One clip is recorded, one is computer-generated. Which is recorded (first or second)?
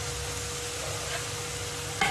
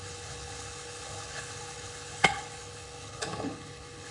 first